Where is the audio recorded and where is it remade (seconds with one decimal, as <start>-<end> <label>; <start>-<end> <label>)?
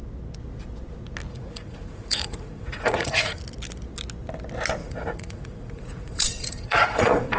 0.0-1.3 recorded; 1.3-3.4 remade; 3.4-4.8 recorded; 4.8-7.4 remade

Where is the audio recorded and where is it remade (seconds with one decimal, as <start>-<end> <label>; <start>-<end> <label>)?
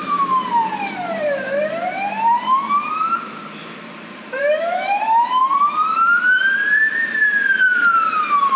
0.0-8.6 remade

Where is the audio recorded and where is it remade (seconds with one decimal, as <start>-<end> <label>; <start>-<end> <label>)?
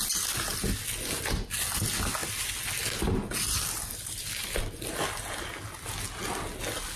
0.0-7.0 recorded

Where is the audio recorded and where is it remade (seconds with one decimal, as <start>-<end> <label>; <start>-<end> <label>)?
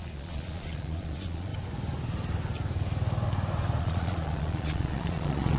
0.0-1.5 remade; 1.5-3.8 recorded; 3.8-5.6 remade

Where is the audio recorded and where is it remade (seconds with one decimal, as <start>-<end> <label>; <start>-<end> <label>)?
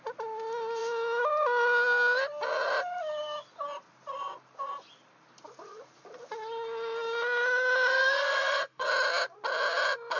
0.0-7.9 recorded; 7.9-8.9 remade; 8.9-10.2 recorded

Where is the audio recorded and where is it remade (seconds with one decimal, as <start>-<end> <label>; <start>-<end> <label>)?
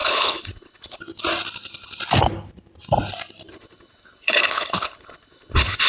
0.0-1.0 remade; 1.0-3.5 recorded; 3.5-5.9 remade